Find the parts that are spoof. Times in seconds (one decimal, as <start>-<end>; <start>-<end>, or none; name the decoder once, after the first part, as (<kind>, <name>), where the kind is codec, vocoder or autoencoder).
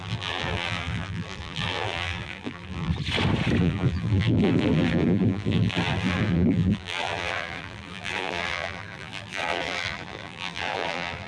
0.0-2.9 (vocoder, BigVGAN v2); 3.6-11.3